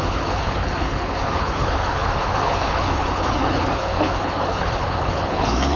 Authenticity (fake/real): fake